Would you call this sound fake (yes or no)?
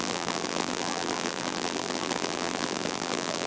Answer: yes